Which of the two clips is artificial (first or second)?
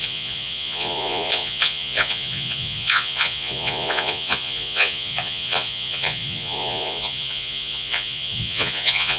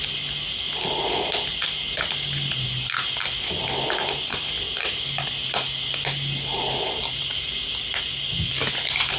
first